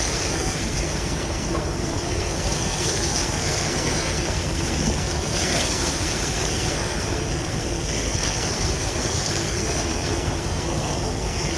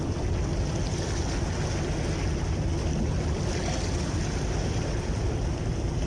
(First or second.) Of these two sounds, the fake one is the first